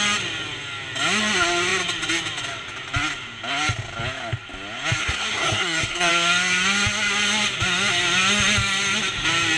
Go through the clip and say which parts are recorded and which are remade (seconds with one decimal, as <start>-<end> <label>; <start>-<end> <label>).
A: 0.0-5.0 recorded; 5.0-6.1 remade; 6.1-9.6 recorded